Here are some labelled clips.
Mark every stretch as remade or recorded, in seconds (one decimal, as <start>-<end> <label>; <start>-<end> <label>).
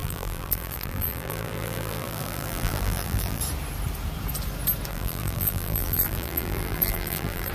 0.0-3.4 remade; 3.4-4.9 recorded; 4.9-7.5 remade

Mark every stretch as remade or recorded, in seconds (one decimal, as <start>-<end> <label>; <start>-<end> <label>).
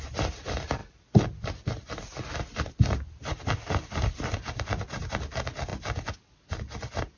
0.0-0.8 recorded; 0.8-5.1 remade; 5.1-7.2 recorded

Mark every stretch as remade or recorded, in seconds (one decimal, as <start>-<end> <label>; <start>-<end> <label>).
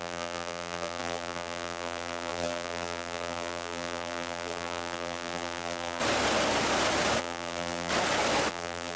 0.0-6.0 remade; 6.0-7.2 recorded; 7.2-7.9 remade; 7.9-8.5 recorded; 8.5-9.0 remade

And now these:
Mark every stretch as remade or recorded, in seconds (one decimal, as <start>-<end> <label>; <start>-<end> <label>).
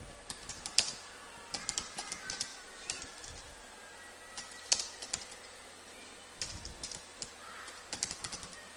0.0-2.5 recorded; 2.5-3.8 remade; 3.8-8.8 recorded